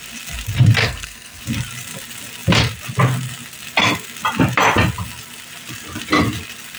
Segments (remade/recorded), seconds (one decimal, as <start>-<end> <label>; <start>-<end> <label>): 0.0-0.8 recorded; 0.8-1.4 remade; 1.4-6.8 recorded